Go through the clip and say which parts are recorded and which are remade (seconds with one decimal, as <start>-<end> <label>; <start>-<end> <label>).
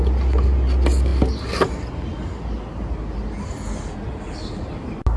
0.0-5.2 recorded